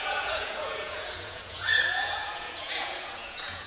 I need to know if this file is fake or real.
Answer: fake